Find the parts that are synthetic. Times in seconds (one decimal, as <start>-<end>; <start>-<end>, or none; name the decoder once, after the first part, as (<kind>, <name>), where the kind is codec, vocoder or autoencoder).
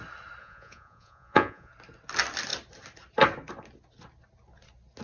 0.4-1.7 (vocoder, Vocos)